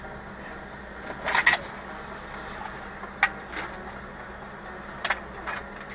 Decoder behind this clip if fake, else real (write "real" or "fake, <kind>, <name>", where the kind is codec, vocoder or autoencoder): real